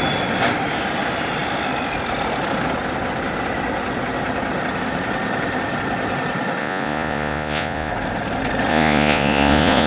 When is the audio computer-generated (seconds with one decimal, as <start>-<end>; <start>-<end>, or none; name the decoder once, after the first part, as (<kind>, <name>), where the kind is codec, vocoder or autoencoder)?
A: 6.6-7.9 (vocoder, Vocos); 8.7-9.9